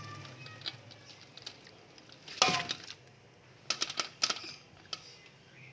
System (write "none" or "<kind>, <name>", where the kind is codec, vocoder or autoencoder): none